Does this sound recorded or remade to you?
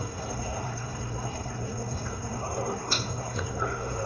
remade